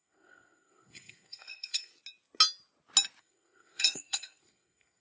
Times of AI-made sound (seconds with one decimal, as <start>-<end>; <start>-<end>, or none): 0.0-1.9; 3.2-5.0